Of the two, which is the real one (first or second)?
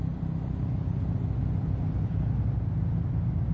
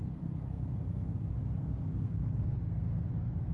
first